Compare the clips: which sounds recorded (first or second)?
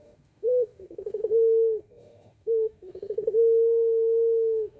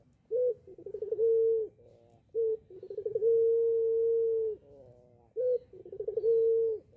second